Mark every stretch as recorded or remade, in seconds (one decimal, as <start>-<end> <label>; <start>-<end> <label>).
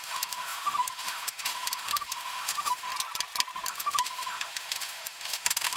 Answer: 0.0-2.9 remade; 2.9-3.7 recorded; 3.7-5.8 remade